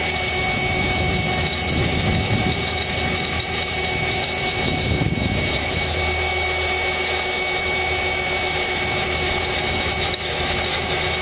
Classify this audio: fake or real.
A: fake